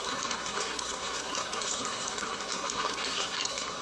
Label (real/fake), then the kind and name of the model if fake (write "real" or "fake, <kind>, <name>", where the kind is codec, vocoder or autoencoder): fake, codec, SNAC